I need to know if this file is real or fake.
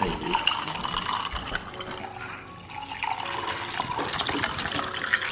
real